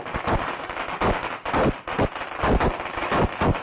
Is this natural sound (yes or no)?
yes